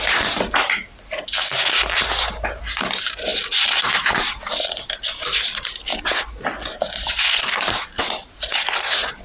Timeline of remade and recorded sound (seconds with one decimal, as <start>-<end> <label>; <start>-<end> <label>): 0.0-9.2 recorded